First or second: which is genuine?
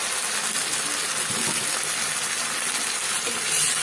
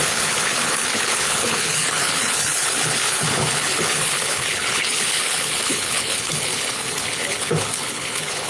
first